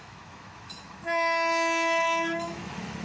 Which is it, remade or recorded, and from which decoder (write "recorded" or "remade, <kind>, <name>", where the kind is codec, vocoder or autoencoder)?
remade, autoencoder, DAC-VAE